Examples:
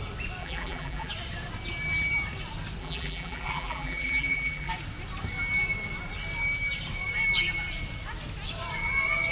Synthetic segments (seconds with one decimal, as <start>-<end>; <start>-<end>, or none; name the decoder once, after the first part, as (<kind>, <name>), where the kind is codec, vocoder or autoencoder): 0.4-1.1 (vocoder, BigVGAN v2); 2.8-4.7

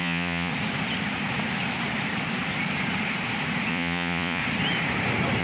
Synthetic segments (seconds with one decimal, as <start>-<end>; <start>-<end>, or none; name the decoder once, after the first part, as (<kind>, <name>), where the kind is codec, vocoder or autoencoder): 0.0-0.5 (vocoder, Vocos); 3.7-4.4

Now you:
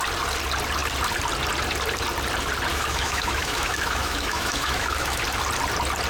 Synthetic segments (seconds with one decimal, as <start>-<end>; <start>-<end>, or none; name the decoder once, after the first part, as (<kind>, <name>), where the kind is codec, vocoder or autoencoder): 2.7-5.2 (autoencoder, DAC-VAE)

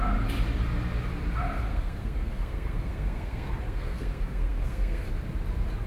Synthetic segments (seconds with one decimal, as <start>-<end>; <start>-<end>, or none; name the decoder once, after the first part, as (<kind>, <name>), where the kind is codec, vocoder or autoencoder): 1.7-5.1 (codec, SNAC)

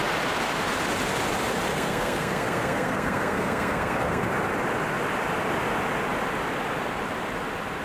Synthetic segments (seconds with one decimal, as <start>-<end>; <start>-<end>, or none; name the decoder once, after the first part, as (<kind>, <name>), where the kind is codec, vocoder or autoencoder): 1.7-4.3 (codec, SNAC)

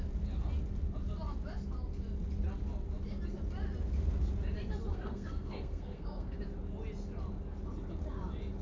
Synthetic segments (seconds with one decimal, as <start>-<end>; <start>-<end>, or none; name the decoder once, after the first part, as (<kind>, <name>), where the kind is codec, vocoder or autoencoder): 4.9-6.4 (codec, SNAC)